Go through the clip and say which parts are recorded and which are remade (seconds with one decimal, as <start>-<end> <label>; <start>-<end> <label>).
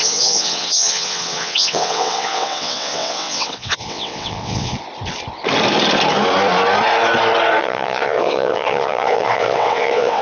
0.0-4.7 remade; 4.7-7.6 recorded; 7.6-10.2 remade